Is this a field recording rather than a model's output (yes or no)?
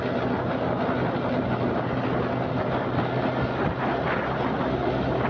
yes